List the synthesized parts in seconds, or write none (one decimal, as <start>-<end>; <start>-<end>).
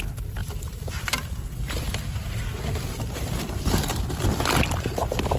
0.4-3.6